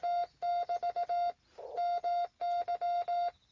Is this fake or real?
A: real